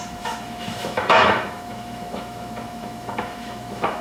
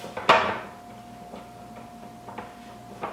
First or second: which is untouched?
second